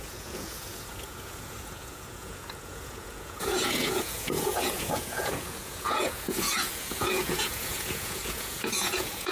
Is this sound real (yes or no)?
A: no